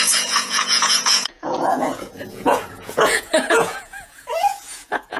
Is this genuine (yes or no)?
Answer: no